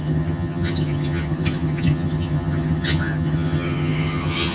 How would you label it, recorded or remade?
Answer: remade